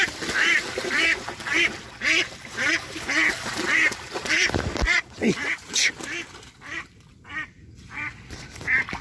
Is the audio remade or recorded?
recorded